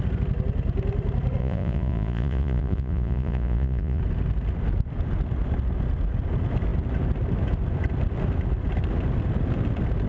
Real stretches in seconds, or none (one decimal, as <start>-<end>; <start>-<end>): 0.0-1.4; 4.0-10.1